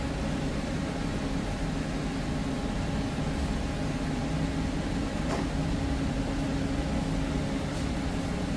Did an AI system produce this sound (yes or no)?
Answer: no